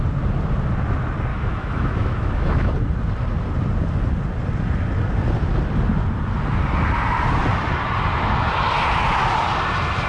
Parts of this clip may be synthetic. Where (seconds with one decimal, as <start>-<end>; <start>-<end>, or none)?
1.3-2.7